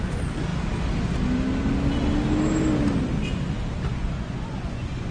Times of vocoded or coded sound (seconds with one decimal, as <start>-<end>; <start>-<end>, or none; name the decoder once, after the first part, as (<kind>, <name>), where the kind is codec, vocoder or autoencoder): 3.9-5.1 (vocoder, Vocos)